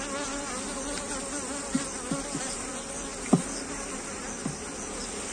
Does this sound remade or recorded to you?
recorded